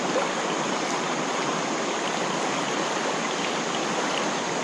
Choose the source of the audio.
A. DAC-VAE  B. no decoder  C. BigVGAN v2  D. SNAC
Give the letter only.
B